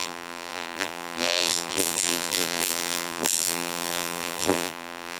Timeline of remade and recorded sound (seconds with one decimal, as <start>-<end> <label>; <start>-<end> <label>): 0.0-5.2 remade